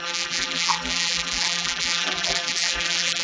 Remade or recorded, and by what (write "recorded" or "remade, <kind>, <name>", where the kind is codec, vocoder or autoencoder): remade, vocoder, BigVGAN v2